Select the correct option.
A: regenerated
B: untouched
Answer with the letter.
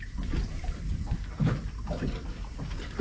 B